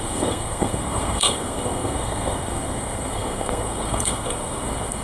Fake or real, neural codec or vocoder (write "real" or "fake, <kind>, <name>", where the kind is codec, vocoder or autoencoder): fake, codec, SNAC